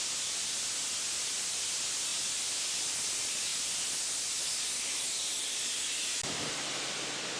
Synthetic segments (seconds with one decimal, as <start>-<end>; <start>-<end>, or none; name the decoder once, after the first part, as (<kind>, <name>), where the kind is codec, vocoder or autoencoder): none